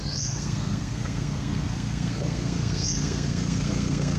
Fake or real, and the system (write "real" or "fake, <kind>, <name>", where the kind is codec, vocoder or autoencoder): fake, codec, SNAC